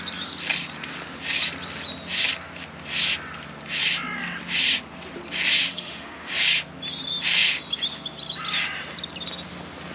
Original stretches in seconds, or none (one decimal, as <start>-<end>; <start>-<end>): 0.0-5.6; 6.3-9.9